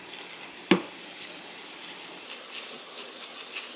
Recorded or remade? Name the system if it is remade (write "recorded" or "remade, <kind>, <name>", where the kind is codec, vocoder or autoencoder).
recorded